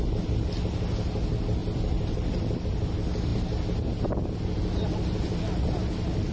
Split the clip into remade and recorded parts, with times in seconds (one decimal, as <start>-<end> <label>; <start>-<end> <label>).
0.0-1.6 recorded; 1.6-2.6 remade; 2.6-3.3 recorded; 3.3-4.0 remade; 4.0-6.3 recorded